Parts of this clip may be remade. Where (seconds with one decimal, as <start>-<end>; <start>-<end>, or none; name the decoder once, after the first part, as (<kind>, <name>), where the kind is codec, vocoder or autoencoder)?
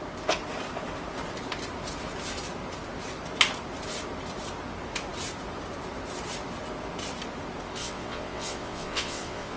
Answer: 7.8-9.6 (vocoder, WaveNeXt)